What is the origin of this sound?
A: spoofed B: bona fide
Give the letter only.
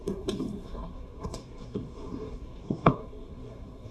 A